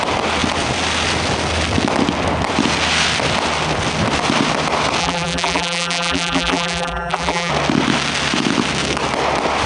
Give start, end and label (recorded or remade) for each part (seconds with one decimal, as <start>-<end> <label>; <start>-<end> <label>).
0.0-5.0 recorded; 5.0-7.5 remade; 7.5-9.7 recorded